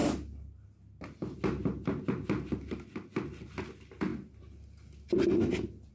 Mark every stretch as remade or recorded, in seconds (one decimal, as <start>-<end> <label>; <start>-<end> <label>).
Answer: 0.0-5.9 recorded